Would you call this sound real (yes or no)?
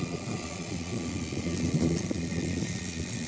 no